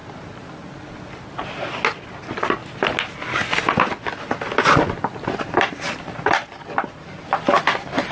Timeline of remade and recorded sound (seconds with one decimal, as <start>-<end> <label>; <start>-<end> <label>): 0.0-8.1 recorded